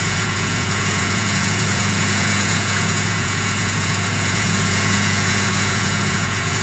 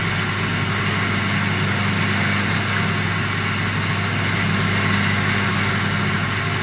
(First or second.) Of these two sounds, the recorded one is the second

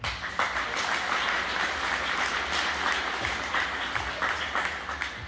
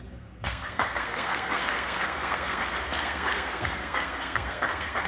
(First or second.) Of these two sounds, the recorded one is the first